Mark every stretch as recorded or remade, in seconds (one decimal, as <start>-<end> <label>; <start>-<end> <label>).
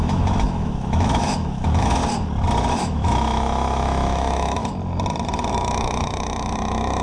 0.0-2.0 remade; 2.0-2.7 recorded; 2.7-4.6 remade; 4.6-5.5 recorded; 5.5-7.0 remade